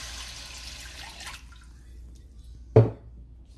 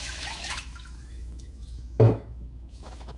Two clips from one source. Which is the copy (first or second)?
second